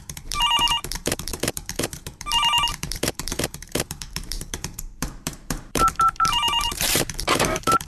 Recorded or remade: remade